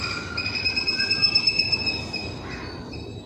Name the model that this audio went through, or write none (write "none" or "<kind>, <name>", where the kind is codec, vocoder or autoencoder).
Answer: none